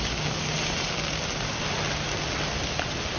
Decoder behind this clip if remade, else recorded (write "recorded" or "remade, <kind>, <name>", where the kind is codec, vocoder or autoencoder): recorded